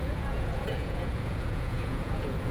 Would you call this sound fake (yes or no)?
yes